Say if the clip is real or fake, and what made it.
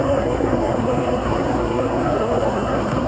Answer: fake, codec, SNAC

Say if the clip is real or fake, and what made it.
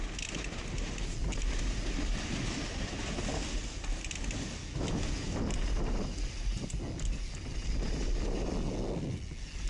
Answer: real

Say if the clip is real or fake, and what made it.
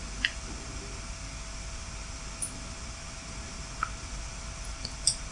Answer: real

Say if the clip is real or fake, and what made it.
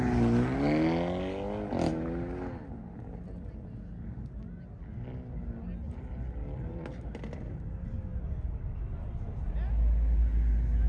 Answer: real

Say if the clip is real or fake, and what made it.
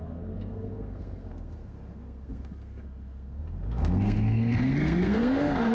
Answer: fake, codec, SNAC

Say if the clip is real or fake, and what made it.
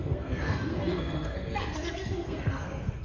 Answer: fake, codec, SNAC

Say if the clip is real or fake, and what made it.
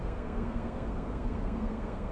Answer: fake, codec, SNAC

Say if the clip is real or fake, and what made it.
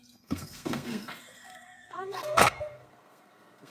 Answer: fake, codec, SNAC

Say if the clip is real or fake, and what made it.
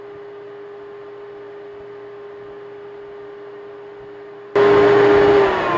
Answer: real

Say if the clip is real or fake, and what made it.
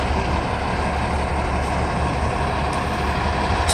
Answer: real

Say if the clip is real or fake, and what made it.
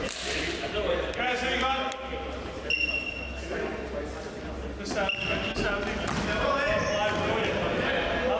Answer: real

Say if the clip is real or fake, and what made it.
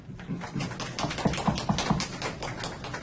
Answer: real